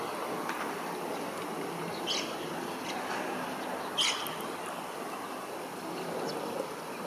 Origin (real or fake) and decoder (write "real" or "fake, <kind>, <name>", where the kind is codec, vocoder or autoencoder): real